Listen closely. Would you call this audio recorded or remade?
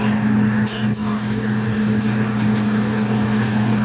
remade